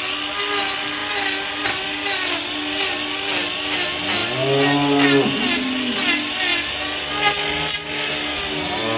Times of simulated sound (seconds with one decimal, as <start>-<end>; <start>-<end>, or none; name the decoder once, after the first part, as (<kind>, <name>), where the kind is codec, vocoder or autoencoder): none